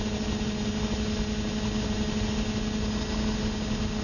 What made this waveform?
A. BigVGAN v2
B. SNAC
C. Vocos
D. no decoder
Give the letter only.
D